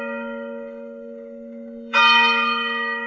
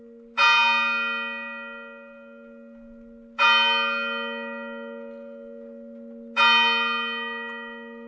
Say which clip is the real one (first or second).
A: second